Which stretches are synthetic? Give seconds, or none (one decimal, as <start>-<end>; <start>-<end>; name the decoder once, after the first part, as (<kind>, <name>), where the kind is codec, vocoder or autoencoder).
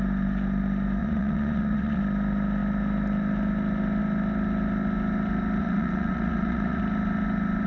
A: 1.0-2.0 (vocoder, Vocos); 5.6-6.8